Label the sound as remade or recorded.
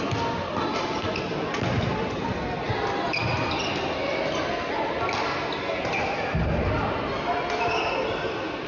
recorded